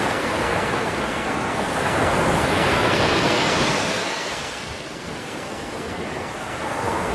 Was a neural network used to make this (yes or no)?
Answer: yes